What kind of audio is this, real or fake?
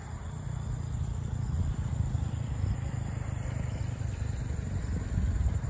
real